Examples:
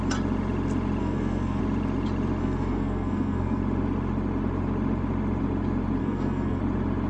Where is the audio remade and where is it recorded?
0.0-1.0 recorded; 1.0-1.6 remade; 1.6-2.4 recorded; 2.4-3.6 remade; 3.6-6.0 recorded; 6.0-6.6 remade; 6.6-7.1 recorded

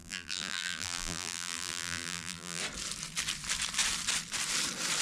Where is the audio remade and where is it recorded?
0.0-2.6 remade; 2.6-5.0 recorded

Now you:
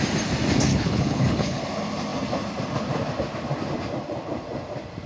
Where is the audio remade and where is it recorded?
0.0-0.7 recorded; 0.7-1.6 remade; 1.6-5.1 recorded

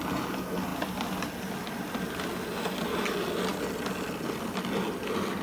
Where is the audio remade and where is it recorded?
0.0-5.4 recorded

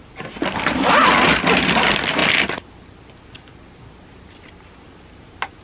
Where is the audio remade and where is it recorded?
0.0-2.2 remade; 2.2-4.9 recorded; 4.9-5.6 remade

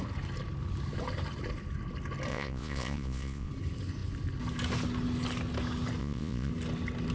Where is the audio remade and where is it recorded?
0.0-2.3 recorded; 2.3-3.5 remade; 3.5-6.0 recorded; 6.0-6.5 remade; 6.5-7.1 recorded

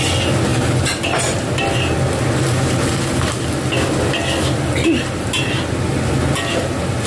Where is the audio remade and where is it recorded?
0.0-0.5 recorded; 0.5-1.6 remade; 1.6-7.1 recorded